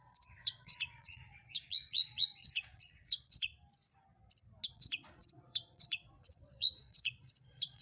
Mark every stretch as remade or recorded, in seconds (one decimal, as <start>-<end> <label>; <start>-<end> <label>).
0.0-3.5 remade; 3.5-4.7 recorded; 4.7-7.8 remade